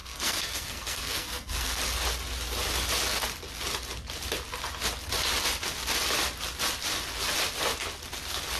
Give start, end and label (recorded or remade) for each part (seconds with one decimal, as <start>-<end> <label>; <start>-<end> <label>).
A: 0.0-1.8 remade; 1.8-8.6 recorded